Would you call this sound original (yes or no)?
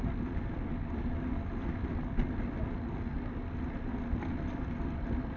yes